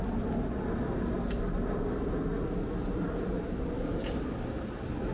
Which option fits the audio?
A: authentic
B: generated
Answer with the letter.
A